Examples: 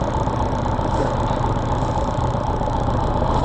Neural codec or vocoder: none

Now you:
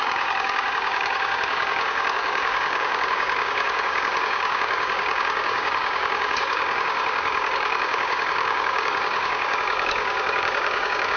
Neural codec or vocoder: codec, DAC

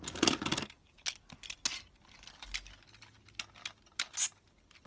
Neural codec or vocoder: none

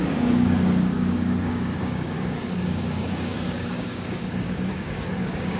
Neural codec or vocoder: codec, DAC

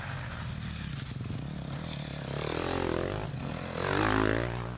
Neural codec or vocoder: none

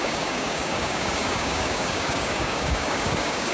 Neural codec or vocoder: codec, DAC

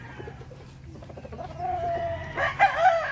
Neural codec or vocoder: none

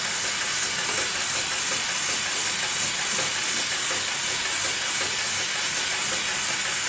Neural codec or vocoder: none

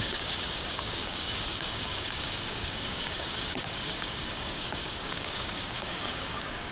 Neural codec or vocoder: codec, DAC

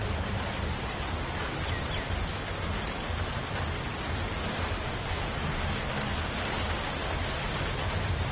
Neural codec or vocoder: none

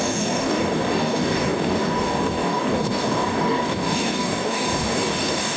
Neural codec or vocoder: codec, DAC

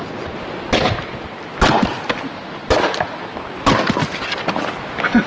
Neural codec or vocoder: none